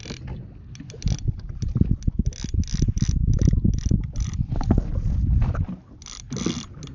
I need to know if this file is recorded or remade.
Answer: recorded